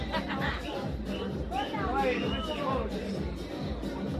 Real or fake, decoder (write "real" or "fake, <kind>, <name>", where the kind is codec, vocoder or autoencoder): real